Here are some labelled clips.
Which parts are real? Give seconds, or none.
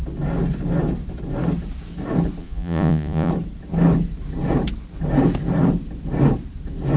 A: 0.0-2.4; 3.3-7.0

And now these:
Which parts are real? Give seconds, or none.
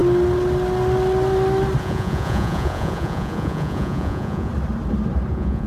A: 0.0-1.8; 4.5-5.3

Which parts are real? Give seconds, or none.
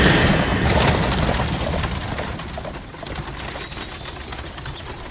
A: 0.0-5.1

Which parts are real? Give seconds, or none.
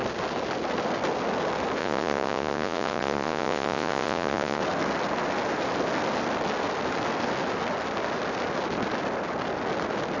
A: 0.0-1.8; 4.6-10.2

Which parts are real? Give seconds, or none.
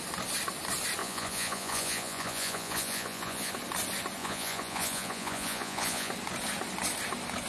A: 0.0-1.0; 3.5-4.2; 6.1-7.5